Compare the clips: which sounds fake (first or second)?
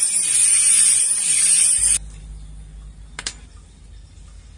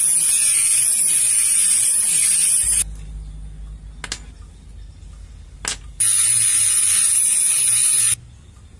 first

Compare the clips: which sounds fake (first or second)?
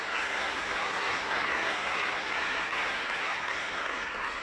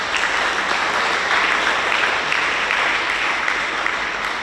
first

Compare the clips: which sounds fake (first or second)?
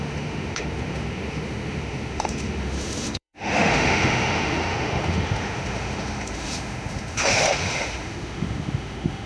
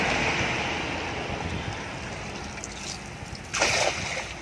first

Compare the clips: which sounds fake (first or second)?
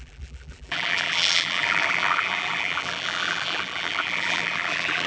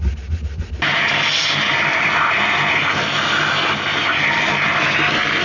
first